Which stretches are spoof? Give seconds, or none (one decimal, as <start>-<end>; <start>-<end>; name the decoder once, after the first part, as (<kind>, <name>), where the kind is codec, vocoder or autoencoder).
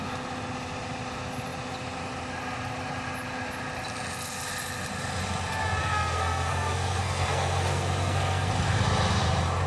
5.8-8.5 (codec, SNAC)